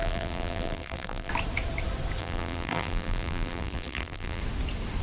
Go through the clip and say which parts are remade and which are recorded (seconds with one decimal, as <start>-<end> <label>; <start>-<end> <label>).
0.0-1.3 remade; 1.3-2.2 recorded; 2.2-4.4 remade; 4.4-5.0 recorded